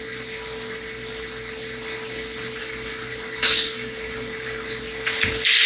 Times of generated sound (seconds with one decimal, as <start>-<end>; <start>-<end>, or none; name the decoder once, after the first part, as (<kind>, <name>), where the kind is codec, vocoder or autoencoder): 2.6-4.8 (codec, DAC)